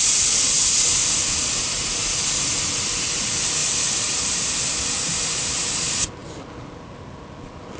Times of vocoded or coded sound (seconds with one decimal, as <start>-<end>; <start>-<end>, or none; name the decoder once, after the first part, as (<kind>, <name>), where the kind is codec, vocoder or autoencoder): none